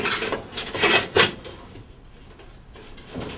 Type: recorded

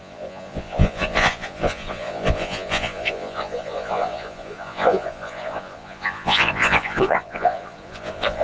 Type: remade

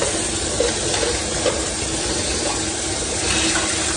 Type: recorded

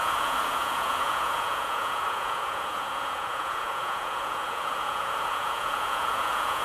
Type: remade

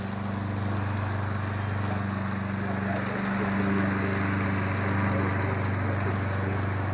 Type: recorded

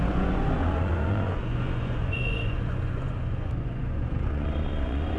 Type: remade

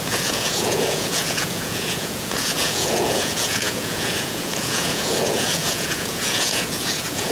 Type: remade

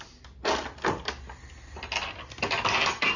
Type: recorded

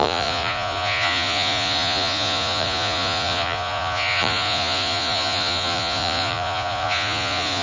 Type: remade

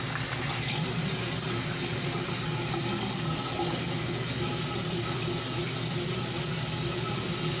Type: recorded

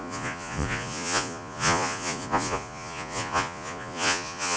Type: remade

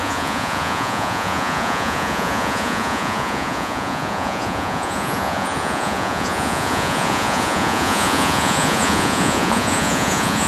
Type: remade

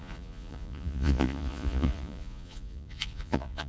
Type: remade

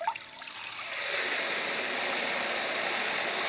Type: recorded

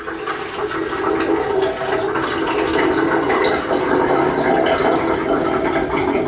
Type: recorded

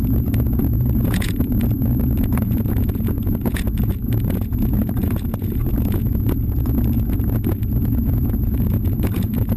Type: remade